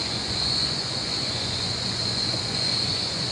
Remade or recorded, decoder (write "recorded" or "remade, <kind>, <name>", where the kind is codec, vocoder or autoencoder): remade, vocoder, Vocos